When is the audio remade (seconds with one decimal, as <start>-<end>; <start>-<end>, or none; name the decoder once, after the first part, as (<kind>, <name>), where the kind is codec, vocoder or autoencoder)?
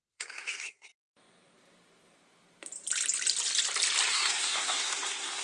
0.0-0.9 (codec, SNAC); 4.1-5.4